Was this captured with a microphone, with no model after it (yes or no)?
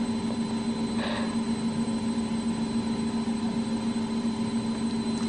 yes